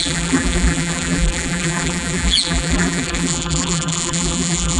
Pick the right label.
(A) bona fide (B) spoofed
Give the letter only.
B